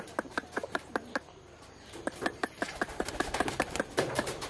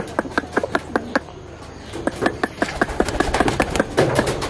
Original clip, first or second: second